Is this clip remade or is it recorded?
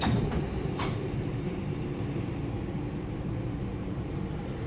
remade